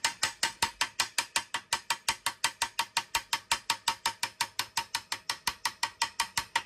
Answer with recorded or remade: recorded